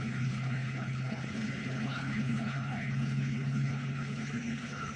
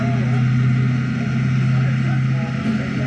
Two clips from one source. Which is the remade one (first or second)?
first